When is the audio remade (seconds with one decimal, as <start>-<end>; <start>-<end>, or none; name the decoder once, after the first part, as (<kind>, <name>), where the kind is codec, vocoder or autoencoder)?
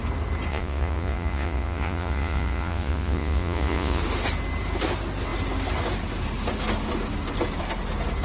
0.5-4.0 (vocoder, Vocos)